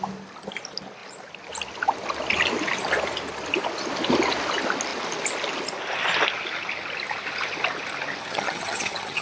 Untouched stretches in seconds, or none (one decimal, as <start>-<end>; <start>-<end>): 0.0-8.2